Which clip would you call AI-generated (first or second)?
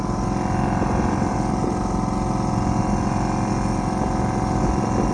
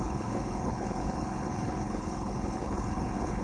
second